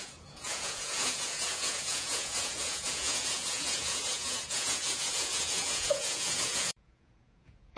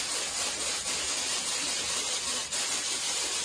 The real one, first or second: second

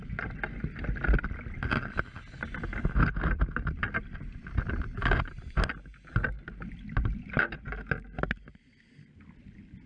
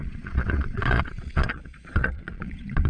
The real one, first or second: first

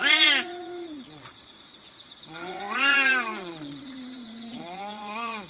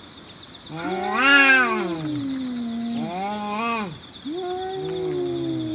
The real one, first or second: second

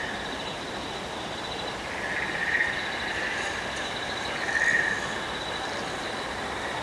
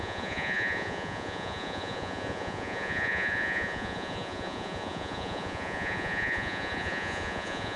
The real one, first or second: first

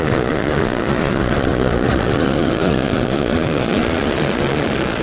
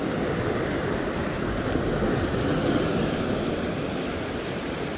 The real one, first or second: second